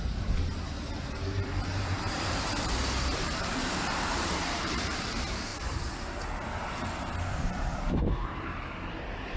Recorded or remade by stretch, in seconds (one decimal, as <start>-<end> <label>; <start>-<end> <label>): 0.0-5.5 remade; 5.5-6.7 recorded; 6.7-9.4 remade